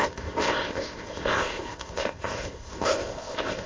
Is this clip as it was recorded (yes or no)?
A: no